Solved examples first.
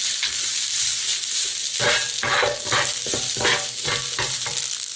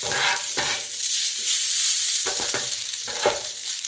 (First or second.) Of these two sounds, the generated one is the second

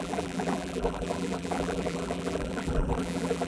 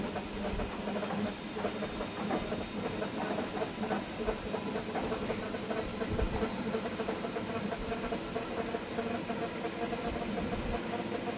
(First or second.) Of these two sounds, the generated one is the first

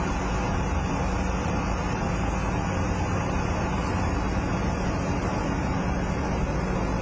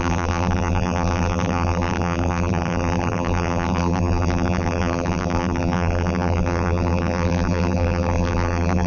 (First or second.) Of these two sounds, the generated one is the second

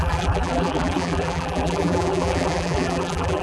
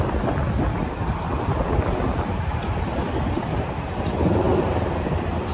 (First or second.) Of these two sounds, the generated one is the first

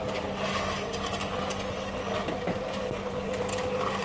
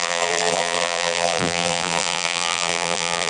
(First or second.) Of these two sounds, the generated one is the second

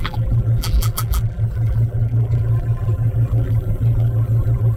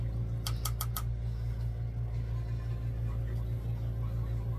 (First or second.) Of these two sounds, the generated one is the first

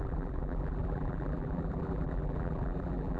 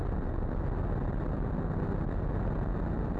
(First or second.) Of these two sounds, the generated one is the first